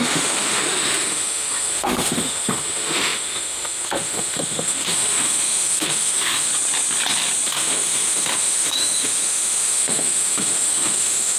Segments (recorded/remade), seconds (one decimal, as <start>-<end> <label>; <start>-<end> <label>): 0.0-6.5 remade; 6.5-7.5 recorded; 7.5-11.4 remade